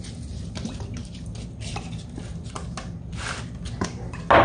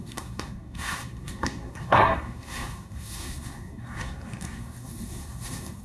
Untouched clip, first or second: first